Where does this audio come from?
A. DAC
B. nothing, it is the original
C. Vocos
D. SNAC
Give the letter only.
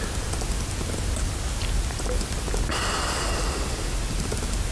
B